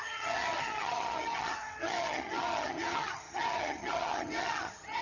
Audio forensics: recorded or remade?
remade